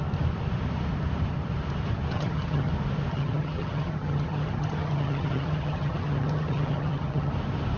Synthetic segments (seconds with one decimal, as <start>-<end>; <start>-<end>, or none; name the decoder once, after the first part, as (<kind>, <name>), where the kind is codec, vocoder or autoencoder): 2.1-2.7 (vocoder, HiFi-GAN); 3.1-7.3